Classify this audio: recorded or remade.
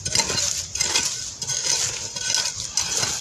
recorded